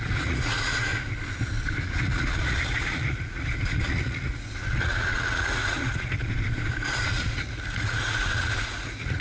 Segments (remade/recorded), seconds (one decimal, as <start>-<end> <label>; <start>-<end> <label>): 0.0-0.9 remade; 0.9-1.8 recorded; 1.8-6.2 remade; 6.2-7.1 recorded; 7.1-9.2 remade